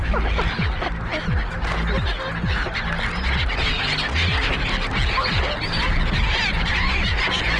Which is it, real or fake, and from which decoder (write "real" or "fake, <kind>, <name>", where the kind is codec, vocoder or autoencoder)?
real